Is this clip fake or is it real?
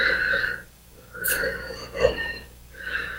fake